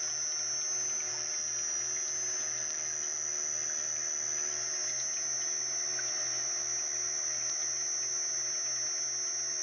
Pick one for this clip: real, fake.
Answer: real